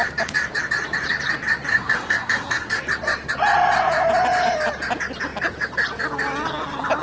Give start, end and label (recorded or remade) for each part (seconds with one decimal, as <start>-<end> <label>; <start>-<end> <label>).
0.0-1.7 recorded; 1.7-2.8 remade; 2.8-7.0 recorded